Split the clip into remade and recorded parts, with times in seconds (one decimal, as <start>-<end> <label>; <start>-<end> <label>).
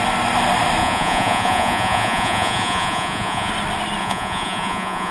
0.0-0.8 recorded; 0.8-3.5 remade; 3.5-4.0 recorded; 4.0-5.1 remade